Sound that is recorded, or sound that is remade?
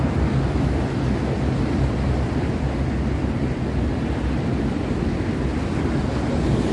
recorded